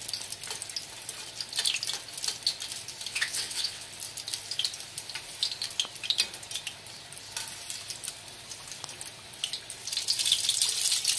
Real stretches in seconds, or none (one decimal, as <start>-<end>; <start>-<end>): 0.0-3.1; 3.9-11.2